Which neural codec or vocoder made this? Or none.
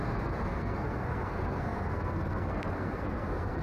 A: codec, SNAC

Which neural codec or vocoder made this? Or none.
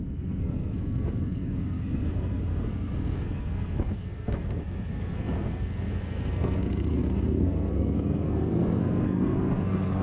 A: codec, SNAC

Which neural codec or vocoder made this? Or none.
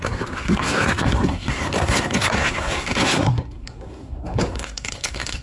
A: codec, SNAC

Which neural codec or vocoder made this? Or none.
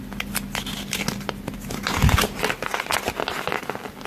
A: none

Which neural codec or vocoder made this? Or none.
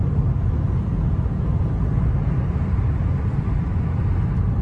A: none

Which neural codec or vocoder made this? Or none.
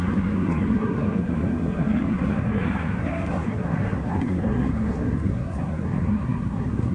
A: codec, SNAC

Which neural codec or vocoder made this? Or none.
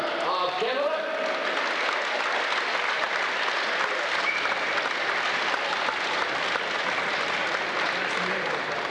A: none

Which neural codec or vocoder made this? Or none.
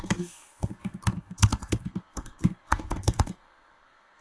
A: codec, SNAC